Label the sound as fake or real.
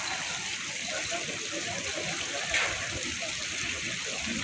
real